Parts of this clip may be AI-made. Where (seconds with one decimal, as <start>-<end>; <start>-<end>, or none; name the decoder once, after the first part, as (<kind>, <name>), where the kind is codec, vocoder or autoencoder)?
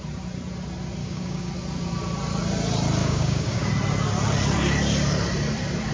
1.0-1.5 (codec, DAC); 3.0-3.7